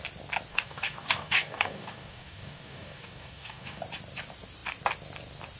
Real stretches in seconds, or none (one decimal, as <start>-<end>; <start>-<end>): 0.0-0.5; 3.8-5.6